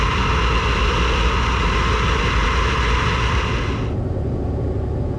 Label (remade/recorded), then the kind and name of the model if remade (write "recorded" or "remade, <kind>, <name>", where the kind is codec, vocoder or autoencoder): recorded